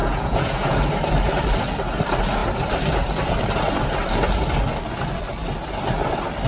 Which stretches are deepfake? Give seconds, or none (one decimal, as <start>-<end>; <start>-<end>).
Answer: 0.0-0.8